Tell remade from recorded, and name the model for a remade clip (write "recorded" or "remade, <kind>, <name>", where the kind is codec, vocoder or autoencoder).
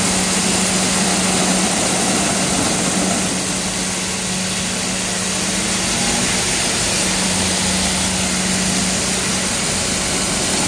recorded